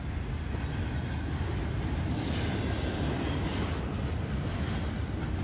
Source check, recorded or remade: recorded